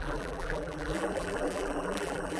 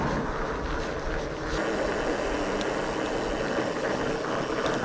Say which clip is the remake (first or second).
first